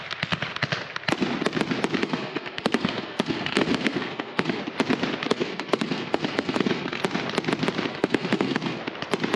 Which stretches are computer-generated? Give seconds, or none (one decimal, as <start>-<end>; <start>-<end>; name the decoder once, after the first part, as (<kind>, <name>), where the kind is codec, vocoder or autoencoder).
2.0-4.6 (codec, SNAC); 5.3-7.0; 7.9-8.8